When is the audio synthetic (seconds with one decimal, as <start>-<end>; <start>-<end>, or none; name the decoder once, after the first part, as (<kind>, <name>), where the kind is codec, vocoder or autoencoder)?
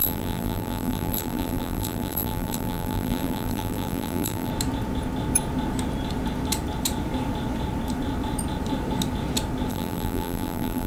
0.0-4.5 (vocoder, BigVGAN v2); 9.7-10.9